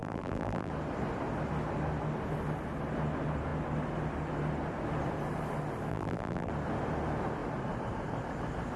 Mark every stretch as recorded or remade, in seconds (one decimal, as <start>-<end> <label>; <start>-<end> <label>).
0.0-0.7 remade; 0.7-5.9 recorded; 5.9-6.5 remade; 6.5-8.8 recorded